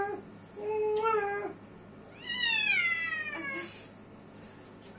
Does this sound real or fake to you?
real